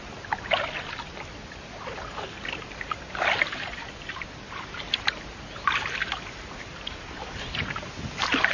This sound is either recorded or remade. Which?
recorded